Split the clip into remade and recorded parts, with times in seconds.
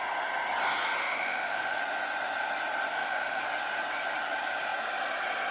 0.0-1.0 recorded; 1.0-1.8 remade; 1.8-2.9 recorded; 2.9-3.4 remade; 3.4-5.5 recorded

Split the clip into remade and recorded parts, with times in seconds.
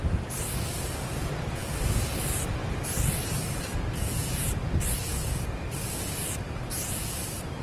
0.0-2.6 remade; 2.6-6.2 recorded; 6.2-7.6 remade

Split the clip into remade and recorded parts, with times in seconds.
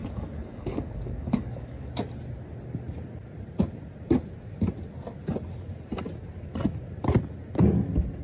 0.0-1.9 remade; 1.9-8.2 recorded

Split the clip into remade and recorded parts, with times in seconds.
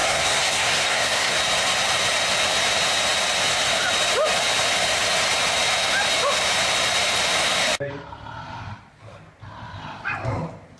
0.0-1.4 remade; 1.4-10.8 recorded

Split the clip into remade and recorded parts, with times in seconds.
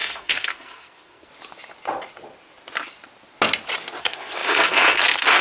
0.0-1.3 remade; 1.3-4.0 recorded; 4.0-5.4 remade